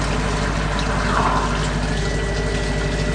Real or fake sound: real